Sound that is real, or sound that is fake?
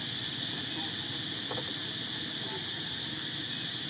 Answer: real